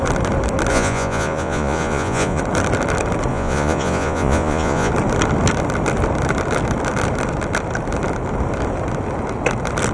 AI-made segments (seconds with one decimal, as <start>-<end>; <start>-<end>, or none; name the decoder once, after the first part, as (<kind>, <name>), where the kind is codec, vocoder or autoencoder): 0.7-2.4 (vocoder, Vocos); 3.3-4.9